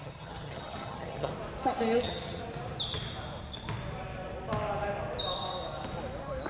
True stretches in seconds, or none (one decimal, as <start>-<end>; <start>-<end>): 1.3-2.0; 2.4-6.5